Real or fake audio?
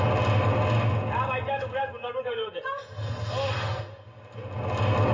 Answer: real